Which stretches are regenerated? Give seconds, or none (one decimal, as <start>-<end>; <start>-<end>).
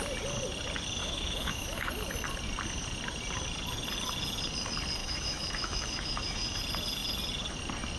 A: 1.0-1.9; 5.0-6.6